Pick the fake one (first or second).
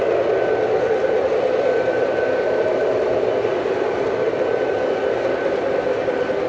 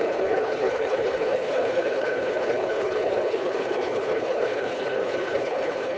second